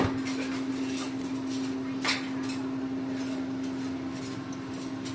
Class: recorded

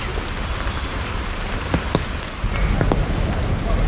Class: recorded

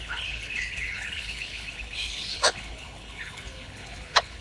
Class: remade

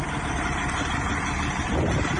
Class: remade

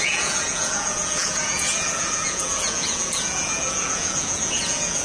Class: remade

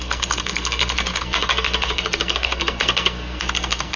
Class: remade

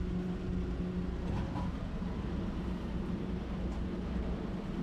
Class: recorded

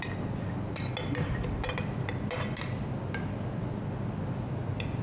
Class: recorded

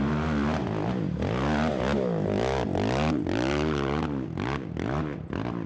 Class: recorded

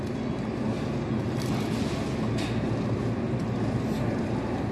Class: recorded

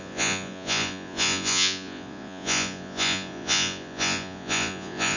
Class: remade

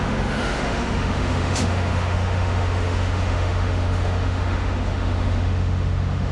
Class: remade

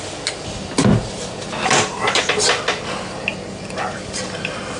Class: recorded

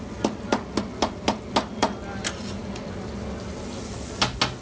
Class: recorded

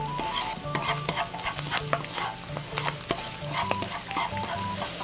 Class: recorded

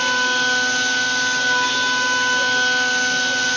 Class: recorded